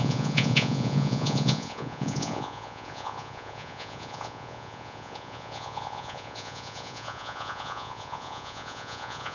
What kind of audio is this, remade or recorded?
remade